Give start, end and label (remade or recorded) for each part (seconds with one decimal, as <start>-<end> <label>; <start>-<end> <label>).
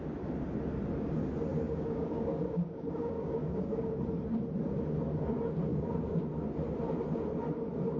0.0-1.5 recorded; 1.5-4.0 remade; 4.0-5.7 recorded; 5.7-6.2 remade; 6.2-8.0 recorded